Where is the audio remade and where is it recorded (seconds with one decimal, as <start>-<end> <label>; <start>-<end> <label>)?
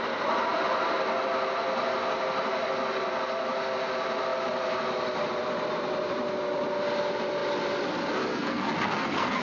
0.0-8.3 recorded; 8.3-9.4 remade